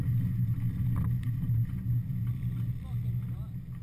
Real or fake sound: real